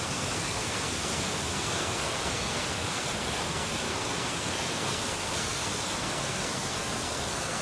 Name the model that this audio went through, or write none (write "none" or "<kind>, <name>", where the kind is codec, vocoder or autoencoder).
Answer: codec, SNAC